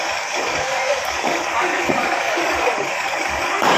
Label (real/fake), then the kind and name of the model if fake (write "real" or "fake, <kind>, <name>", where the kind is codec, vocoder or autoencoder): fake, codec, DAC